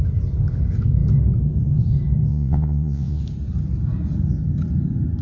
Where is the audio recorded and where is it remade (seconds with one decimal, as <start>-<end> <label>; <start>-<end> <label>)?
0.0-2.3 recorded; 2.3-3.2 remade; 3.2-5.2 recorded